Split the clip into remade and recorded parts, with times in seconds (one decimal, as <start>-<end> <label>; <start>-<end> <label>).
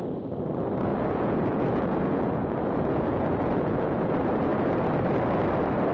0.0-0.9 recorded; 0.9-4.1 remade; 4.1-5.9 recorded